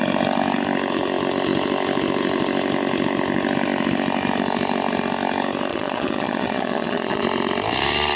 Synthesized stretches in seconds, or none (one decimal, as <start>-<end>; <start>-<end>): 5.7-7.2